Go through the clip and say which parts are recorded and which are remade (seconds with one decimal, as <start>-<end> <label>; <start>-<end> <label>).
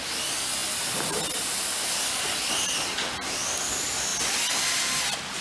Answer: 0.0-5.4 recorded